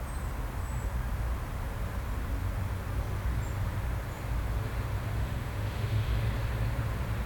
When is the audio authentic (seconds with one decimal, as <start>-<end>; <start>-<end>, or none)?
0.0-5.2; 6.2-7.3

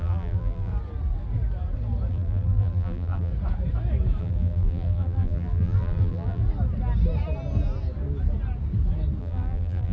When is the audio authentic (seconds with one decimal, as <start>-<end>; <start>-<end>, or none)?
0.7-2.1; 3.3-4.2; 6.4-9.2

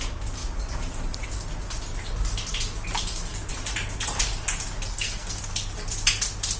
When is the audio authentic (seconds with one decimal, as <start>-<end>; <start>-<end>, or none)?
0.0-4.9; 5.4-6.6